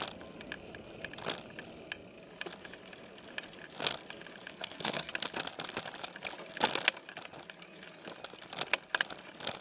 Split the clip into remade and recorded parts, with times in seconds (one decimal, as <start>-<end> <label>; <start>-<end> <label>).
0.0-4.5 recorded; 4.5-5.1 remade; 5.1-9.6 recorded